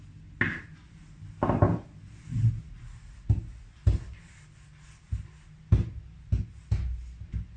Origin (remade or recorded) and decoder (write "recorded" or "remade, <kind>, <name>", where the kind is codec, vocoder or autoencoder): recorded